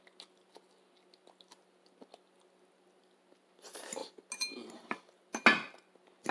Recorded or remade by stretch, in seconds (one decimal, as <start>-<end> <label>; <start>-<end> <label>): 0.0-6.3 recorded